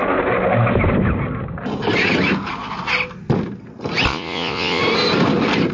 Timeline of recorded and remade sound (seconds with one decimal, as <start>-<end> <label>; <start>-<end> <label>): 0.0-4.1 recorded; 4.1-4.8 remade; 4.8-5.7 recorded